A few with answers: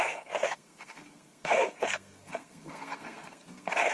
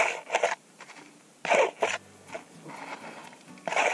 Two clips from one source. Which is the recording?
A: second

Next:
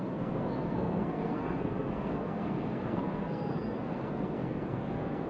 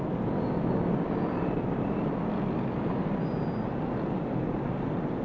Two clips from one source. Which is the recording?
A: second